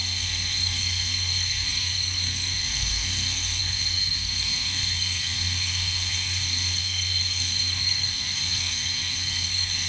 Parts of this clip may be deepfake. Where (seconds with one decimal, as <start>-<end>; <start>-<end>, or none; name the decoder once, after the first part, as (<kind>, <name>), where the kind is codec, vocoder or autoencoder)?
0.0-9.9 (codec, SNAC)